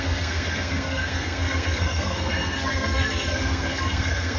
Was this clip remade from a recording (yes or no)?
yes